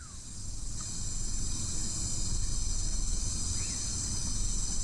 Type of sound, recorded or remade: recorded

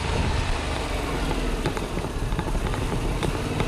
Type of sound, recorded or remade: recorded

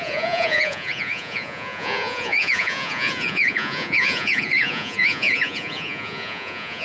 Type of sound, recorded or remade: remade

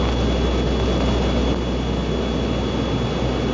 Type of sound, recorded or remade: recorded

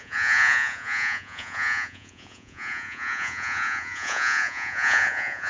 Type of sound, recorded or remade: remade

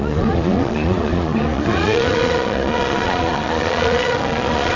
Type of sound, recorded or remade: remade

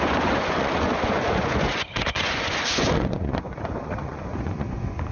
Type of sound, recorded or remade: remade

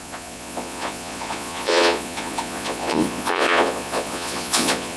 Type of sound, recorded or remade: remade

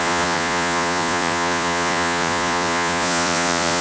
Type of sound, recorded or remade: remade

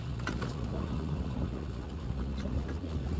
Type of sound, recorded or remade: remade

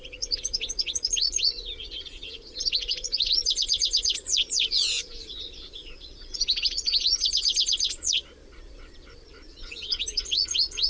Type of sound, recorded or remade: remade